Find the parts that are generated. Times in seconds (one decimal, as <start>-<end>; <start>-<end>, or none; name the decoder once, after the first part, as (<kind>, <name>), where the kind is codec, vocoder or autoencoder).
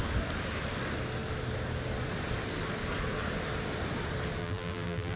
4.4-5.2 (vocoder, BigVGAN v2)